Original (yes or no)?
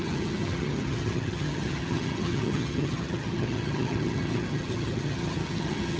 no